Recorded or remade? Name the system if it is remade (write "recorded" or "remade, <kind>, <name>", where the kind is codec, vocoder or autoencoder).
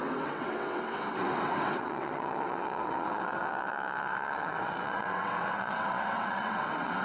remade, vocoder, WaveNeXt